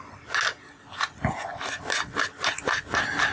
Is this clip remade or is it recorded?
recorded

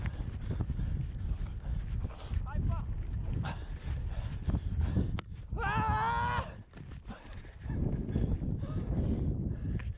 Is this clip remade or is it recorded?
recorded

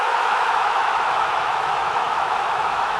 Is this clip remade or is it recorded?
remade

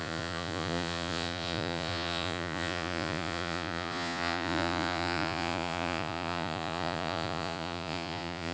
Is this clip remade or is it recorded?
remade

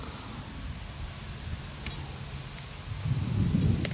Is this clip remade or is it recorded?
recorded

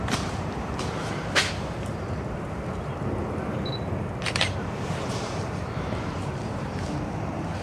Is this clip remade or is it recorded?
remade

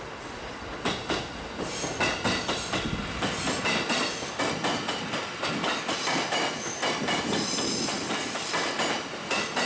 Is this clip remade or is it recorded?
recorded